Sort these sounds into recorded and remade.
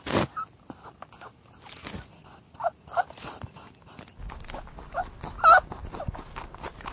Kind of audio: recorded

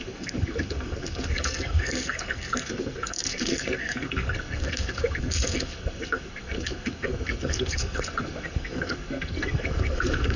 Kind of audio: remade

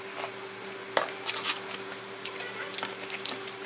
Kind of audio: recorded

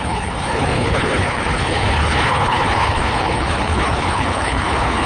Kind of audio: remade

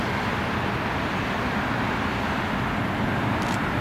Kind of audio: recorded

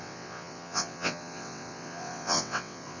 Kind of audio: remade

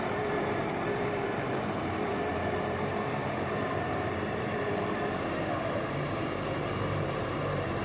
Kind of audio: remade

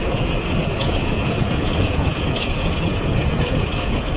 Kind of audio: remade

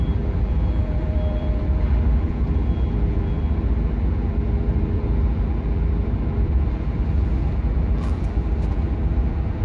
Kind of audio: remade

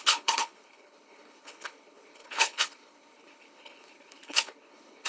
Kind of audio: remade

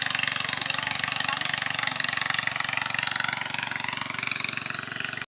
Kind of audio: recorded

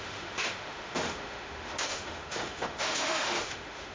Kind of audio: remade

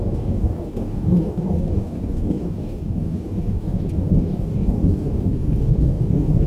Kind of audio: remade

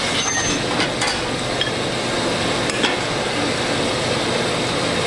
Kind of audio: recorded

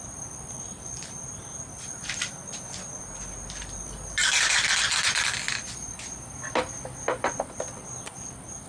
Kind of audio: recorded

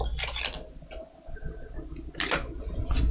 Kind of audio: recorded